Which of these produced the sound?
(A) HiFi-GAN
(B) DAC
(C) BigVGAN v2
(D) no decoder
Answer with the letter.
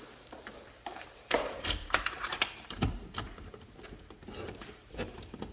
C